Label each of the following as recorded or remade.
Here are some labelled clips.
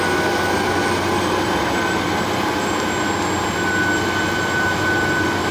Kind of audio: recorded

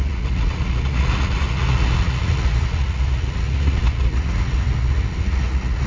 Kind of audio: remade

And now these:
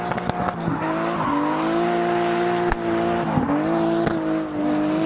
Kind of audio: recorded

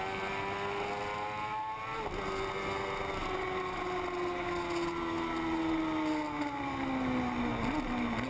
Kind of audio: recorded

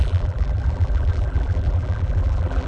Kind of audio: remade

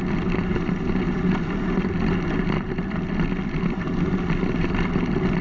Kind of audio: recorded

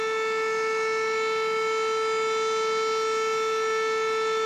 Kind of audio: recorded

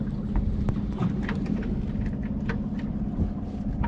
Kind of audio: recorded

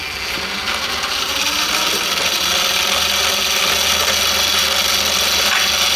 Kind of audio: recorded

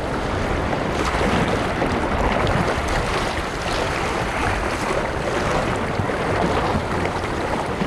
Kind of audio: remade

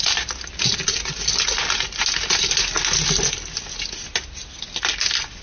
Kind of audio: recorded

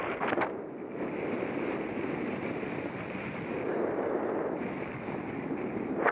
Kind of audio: recorded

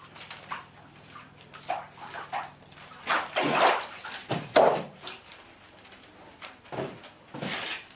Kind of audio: recorded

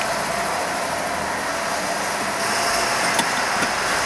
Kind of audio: recorded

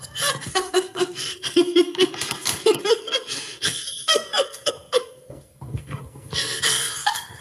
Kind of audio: remade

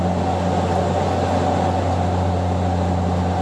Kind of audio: recorded